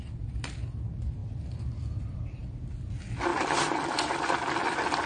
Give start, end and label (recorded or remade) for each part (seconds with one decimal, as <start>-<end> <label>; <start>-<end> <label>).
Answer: 0.0-5.1 recorded